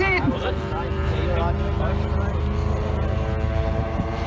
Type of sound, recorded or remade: remade